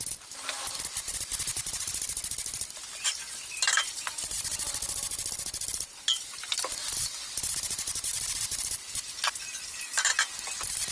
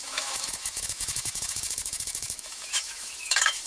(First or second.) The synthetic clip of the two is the second